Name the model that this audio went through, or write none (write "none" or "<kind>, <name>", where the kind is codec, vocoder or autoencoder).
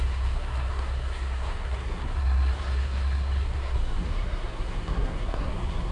codec, SNAC